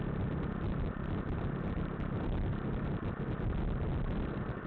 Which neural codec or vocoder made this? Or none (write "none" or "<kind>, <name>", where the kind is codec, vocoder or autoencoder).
none